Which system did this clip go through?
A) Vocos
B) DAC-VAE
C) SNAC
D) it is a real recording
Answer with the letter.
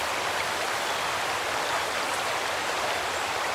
D